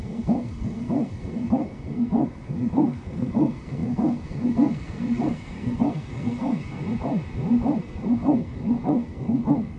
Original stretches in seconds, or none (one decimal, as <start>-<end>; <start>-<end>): 6.8-7.8